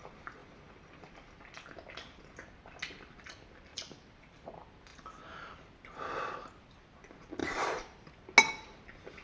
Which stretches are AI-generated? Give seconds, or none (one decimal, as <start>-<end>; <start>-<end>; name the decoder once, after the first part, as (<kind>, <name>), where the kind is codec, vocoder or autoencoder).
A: 0.4-1.1 (vocoder, BigVGAN v2); 3.7-4.5; 7.4-8.1